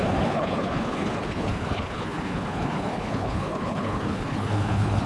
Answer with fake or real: fake